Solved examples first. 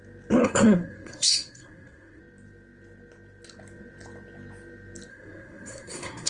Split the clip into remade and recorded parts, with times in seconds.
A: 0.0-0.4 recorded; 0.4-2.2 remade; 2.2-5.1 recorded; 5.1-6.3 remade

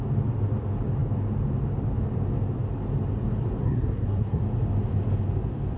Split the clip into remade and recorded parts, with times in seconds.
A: 0.0-3.6 recorded; 3.6-4.4 remade; 4.4-5.8 recorded